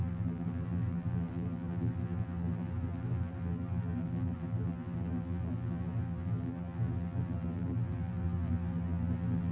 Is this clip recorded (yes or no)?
no